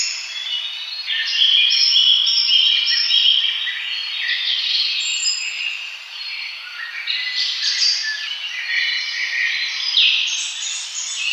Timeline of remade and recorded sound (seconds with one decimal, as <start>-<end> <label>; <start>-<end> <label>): 0.0-11.3 recorded